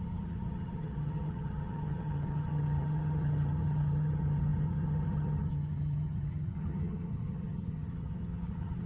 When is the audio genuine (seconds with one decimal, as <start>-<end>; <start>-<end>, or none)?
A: none